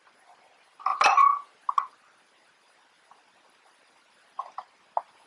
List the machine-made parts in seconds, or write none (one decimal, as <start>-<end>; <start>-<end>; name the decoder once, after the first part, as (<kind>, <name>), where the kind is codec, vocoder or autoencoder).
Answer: none